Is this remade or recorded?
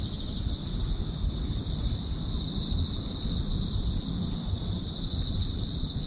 recorded